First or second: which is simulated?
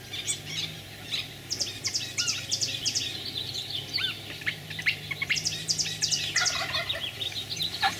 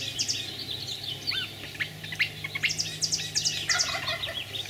first